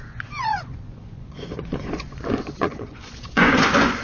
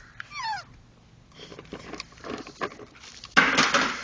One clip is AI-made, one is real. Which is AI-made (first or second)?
first